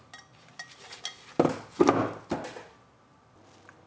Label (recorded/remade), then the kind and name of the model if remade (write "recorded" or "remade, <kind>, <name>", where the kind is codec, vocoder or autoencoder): recorded